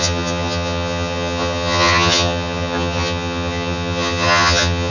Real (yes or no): no